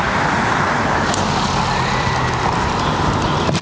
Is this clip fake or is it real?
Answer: real